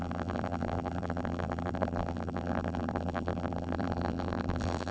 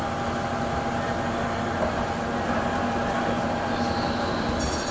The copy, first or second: first